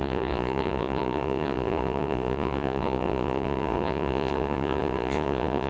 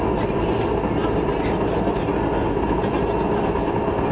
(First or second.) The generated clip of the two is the first